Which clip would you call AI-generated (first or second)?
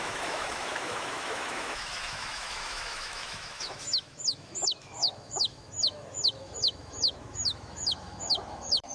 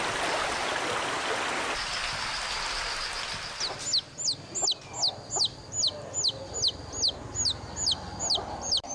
first